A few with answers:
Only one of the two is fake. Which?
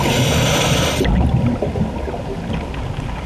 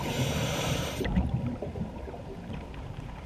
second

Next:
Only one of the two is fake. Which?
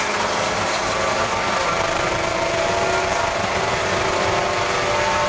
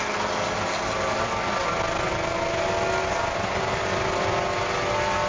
first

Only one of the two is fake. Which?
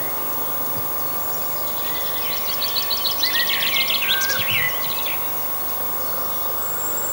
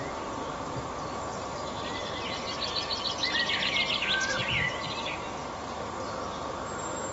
second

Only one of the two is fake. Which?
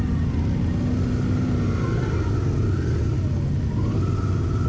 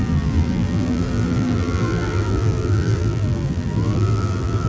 second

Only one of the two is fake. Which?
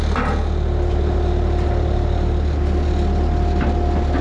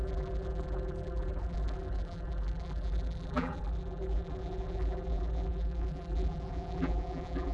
second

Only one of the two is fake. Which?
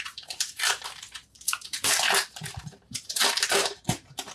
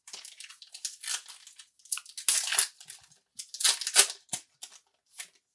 first